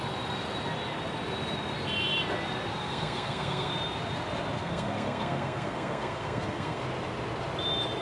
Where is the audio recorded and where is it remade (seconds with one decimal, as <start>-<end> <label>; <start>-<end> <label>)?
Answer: 0.0-2.8 recorded; 2.8-3.7 remade; 3.7-4.6 recorded; 4.6-6.8 remade; 6.8-8.0 recorded